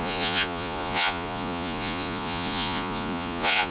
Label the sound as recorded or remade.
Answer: remade